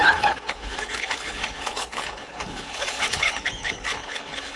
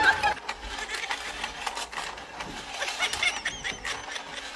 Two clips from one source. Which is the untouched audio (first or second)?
second